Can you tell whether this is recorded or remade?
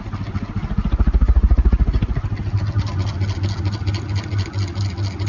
recorded